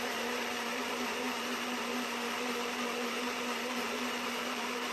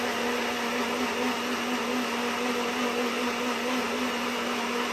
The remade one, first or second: first